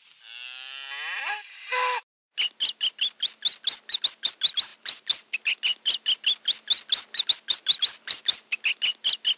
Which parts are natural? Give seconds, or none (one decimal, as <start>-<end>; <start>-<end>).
0.0-9.4